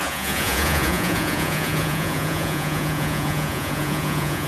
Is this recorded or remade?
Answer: remade